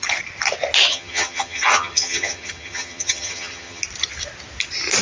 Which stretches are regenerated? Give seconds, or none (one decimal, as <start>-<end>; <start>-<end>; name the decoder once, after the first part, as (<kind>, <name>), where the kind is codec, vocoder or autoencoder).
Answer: 0.9-3.8 (vocoder, HiFi-GAN)